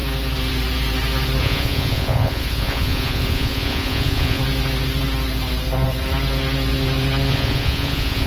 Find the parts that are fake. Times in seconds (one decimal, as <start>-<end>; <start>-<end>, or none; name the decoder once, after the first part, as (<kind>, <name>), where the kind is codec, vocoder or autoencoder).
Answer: 1.4-4.4 (vocoder, Vocos); 7.3-8.3